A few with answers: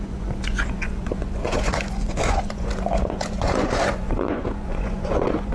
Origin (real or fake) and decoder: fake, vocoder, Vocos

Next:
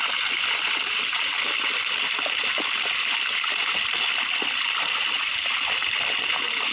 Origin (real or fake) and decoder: real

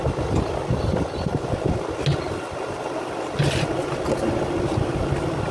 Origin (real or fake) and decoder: real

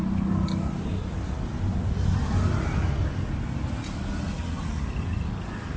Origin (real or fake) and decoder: real